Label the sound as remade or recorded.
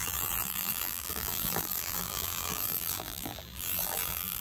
remade